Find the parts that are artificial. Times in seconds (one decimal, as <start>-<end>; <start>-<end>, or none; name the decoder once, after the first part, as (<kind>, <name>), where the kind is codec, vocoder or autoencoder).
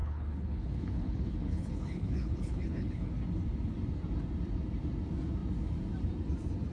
0.0-3.1 (codec, HILCodec)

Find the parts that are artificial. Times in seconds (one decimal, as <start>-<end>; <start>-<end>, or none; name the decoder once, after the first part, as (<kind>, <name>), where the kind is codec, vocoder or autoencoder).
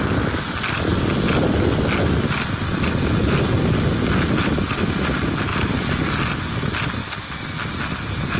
0.0-8.4 (vocoder, BigVGAN v2)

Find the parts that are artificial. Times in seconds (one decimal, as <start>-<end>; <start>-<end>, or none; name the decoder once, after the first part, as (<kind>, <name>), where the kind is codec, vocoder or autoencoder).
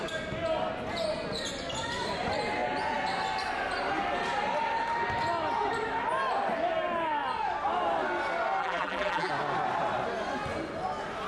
8.6-9.3 (vocoder, BigVGAN v2)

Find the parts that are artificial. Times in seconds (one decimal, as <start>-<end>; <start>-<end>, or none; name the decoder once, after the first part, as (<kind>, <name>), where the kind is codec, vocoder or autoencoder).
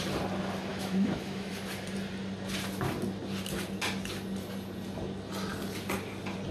0.7-1.5 (autoencoder, DAC-VAE)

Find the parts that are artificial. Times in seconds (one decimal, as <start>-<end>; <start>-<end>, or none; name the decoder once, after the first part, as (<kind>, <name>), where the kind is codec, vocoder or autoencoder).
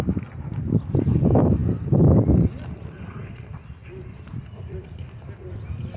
none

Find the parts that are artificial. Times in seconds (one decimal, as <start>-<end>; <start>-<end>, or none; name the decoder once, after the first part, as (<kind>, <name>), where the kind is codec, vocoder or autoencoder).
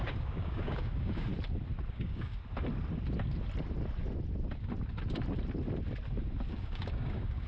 0.0-1.3 (codec, DAC); 1.9-2.4; 6.5-7.5